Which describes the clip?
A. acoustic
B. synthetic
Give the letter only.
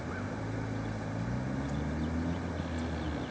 A